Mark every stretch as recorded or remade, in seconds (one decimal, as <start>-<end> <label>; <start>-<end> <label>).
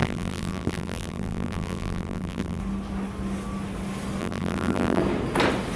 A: 0.0-2.6 remade; 2.6-4.2 recorded; 4.2-5.0 remade; 5.0-5.8 recorded